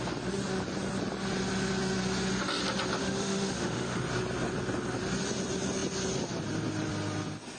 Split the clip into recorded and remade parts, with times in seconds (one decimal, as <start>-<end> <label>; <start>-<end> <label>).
0.0-3.0 recorded; 3.0-4.0 remade; 4.0-7.6 recorded